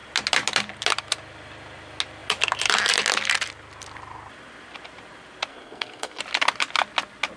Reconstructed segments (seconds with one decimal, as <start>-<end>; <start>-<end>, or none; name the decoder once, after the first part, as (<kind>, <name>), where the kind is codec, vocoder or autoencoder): 5.5-6.2 (codec, SNAC)